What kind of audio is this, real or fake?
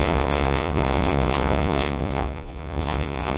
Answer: fake